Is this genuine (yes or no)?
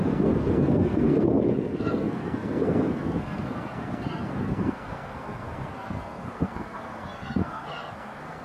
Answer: no